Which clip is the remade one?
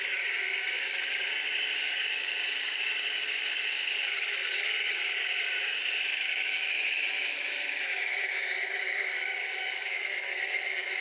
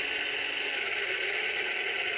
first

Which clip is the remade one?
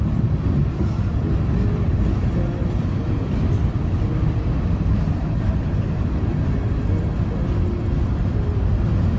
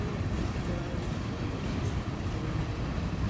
second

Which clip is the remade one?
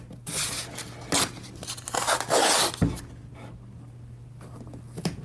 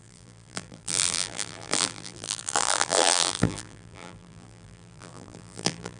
second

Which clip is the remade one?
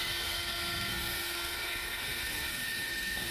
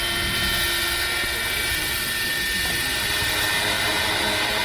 first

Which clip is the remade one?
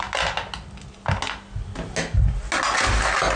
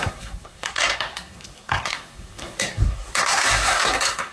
second